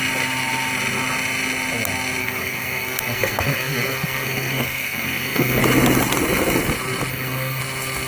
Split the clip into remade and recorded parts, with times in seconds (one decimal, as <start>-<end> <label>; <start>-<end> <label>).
0.0-2.2 recorded; 2.2-5.6 remade; 5.6-7.1 recorded; 7.1-7.6 remade; 7.6-8.1 recorded